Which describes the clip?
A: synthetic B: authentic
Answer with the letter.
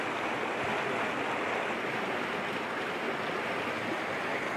B